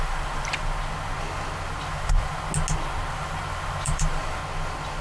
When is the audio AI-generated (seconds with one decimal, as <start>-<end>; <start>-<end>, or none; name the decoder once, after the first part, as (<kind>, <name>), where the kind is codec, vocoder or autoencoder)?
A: 0.0-0.6 (vocoder, BigVGAN v2); 1.8-2.3; 3.1-4.4